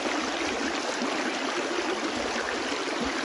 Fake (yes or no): no